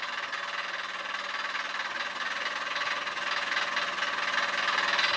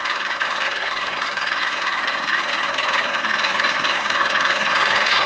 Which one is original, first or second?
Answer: first